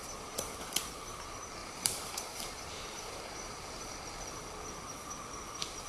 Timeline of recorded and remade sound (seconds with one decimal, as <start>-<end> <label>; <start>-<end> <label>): 0.0-0.8 remade; 0.8-1.6 recorded; 1.6-4.0 remade; 4.0-5.9 recorded